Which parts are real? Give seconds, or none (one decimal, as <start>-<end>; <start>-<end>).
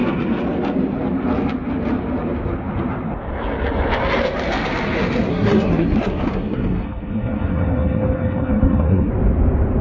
0.0-5.3; 9.1-9.8